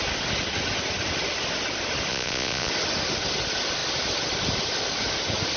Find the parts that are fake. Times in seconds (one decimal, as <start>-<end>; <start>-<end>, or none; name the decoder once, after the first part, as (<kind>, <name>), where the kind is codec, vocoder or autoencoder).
2.1-2.7 (vocoder, Vocos)